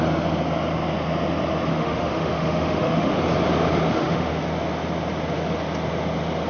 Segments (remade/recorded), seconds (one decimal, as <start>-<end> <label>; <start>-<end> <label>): 0.0-1.7 recorded; 1.7-3.2 remade; 3.2-3.9 recorded; 3.9-4.4 remade; 4.4-6.5 recorded